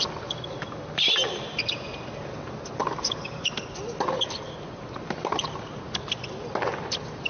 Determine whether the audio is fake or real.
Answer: real